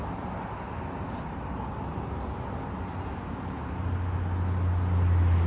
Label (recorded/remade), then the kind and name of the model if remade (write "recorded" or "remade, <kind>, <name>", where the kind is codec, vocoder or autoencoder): recorded